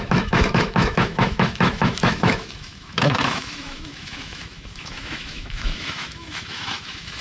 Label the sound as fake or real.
fake